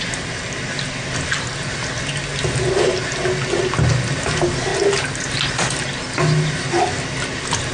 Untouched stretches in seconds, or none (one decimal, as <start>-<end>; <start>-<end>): 0.0-7.7